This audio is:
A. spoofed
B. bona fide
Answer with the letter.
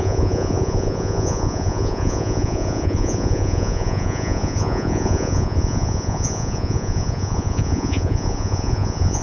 A